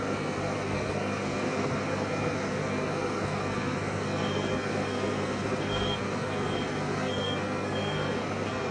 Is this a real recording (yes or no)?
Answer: no